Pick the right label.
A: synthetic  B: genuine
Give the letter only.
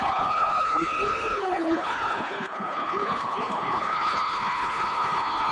A